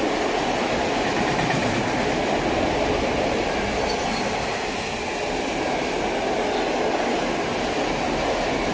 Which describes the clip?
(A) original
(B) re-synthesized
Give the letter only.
A